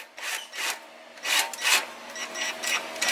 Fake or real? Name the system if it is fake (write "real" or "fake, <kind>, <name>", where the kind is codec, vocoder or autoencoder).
real